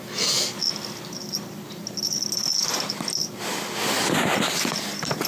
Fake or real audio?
real